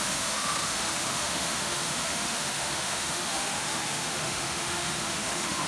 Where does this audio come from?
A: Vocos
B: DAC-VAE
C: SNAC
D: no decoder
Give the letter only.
B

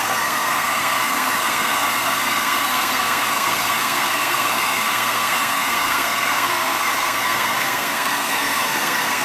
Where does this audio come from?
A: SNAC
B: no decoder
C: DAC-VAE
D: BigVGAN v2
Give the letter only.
A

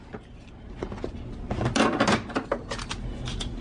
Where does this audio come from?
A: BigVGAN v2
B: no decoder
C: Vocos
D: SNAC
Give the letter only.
B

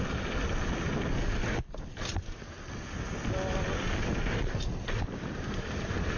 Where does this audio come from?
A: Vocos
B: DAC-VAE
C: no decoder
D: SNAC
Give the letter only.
C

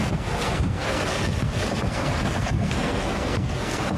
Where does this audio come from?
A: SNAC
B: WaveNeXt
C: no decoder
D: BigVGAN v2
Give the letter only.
A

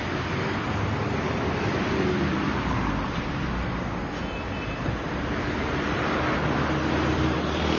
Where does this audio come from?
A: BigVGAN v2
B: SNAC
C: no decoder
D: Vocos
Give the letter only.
A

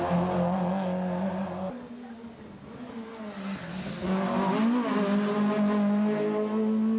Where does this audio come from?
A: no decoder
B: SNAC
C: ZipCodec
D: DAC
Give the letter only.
A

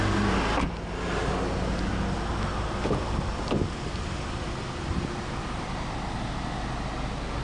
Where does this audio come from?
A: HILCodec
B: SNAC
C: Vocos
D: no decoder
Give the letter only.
D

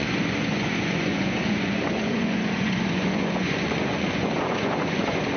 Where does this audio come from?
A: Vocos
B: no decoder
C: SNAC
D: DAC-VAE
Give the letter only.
A